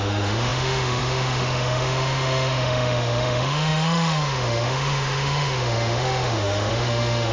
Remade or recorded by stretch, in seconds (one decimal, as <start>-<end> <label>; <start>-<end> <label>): 0.0-7.3 remade